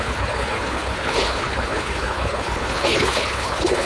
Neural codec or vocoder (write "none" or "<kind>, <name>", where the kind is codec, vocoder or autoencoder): codec, HILCodec